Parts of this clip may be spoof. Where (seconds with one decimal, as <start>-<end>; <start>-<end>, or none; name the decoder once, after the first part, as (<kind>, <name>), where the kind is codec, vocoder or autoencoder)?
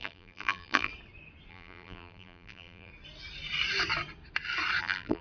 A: 0.0-0.9 (vocoder, BigVGAN v2); 1.5-2.9; 4.8-5.2